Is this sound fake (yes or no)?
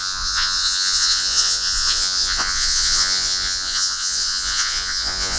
yes